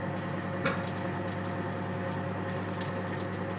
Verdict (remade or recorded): recorded